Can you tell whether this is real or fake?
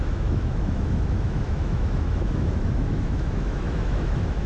fake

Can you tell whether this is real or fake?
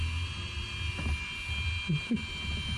real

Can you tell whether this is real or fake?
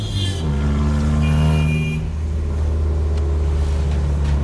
real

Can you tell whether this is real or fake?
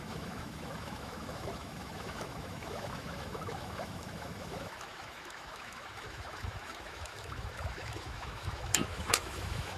fake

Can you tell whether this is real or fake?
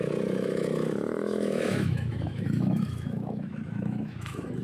fake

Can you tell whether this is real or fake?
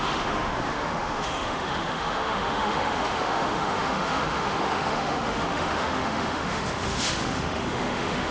fake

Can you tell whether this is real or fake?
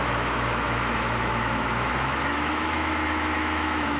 fake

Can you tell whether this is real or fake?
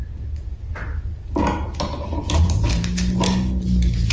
real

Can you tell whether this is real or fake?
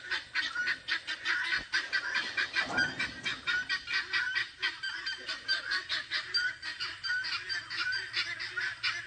real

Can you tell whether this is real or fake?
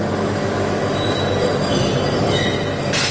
real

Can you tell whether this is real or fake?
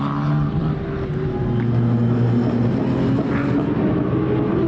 real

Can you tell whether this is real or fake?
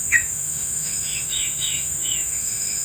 fake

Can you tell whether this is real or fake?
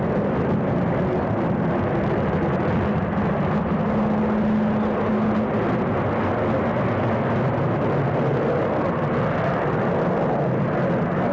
real